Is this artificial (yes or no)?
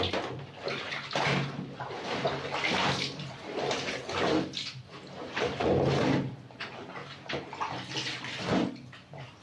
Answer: no